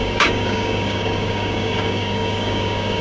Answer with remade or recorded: remade